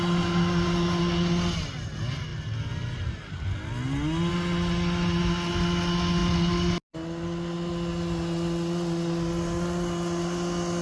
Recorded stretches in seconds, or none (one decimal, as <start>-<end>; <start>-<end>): 0.0-10.8